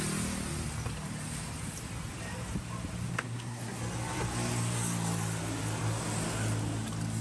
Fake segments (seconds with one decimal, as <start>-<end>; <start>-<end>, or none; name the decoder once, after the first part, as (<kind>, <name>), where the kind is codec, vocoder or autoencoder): 3.1-3.8 (codec, SNAC)